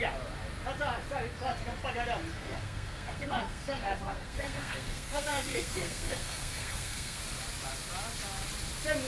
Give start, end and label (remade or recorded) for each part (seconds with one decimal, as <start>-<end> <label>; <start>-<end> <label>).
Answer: 0.0-2.3 recorded; 2.3-7.2 remade; 7.2-9.1 recorded